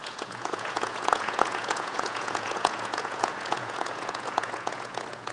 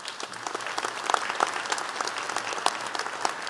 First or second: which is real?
second